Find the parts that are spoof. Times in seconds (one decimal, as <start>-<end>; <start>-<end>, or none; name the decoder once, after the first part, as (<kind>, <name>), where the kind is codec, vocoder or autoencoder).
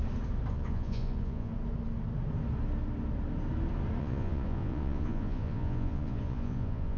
0.5-1.5 (vocoder, Vocos); 4.0-7.0